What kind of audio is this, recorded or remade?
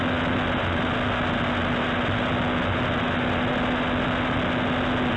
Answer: recorded